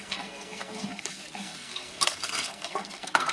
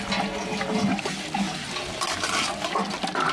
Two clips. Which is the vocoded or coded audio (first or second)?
first